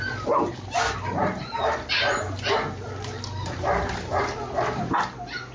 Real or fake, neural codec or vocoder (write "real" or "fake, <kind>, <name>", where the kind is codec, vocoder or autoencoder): real